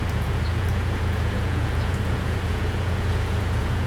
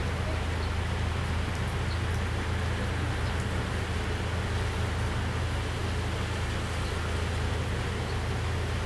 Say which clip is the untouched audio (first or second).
second